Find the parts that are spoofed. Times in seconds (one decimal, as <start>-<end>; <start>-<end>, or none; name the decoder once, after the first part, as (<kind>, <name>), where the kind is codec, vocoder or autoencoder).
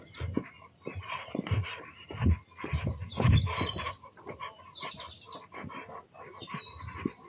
none